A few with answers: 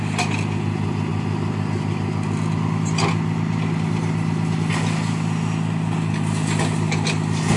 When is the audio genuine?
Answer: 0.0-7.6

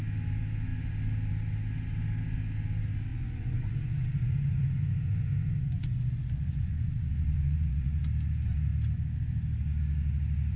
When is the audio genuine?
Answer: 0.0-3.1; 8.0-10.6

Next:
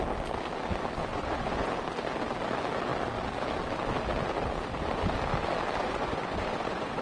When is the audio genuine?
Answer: 0.0-1.0; 1.7-5.8

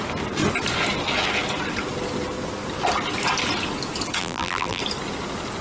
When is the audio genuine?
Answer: 0.0-4.2; 4.8-5.6